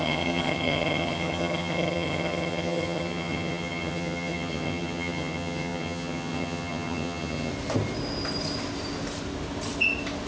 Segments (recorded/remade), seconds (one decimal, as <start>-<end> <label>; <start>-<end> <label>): 0.0-7.5 remade; 7.5-10.3 recorded